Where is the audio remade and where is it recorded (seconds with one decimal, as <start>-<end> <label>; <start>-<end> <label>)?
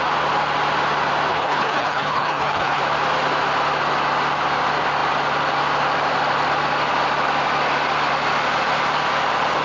0.0-1.3 recorded; 1.3-2.8 remade; 2.8-9.6 recorded